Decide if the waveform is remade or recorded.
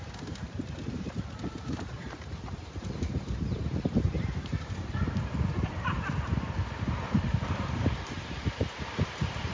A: remade